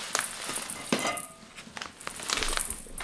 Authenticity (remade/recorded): recorded